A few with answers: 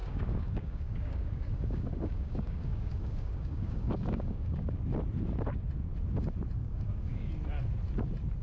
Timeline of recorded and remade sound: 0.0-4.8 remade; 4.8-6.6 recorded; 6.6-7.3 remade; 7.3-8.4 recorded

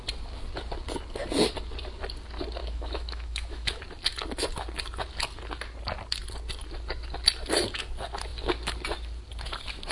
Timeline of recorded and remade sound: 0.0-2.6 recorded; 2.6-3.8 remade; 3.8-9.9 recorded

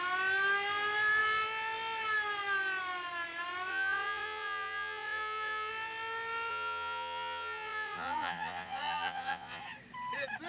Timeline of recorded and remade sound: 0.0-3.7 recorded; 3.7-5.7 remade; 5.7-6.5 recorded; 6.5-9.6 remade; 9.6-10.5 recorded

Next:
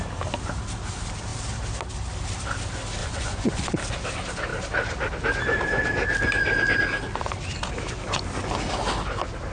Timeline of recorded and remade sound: 0.0-3.0 recorded; 3.0-3.7 remade; 3.7-9.5 recorded

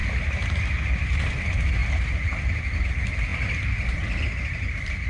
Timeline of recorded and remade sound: 0.0-5.1 recorded